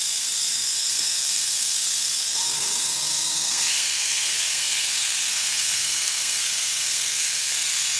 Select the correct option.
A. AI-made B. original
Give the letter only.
A